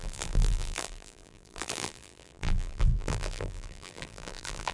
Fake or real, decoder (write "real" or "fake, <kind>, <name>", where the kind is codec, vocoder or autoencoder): fake, vocoder, BigVGAN v2